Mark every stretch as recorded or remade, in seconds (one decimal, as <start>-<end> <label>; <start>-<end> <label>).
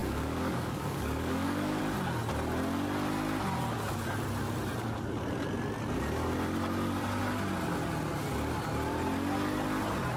0.0-1.8 remade; 1.8-10.2 recorded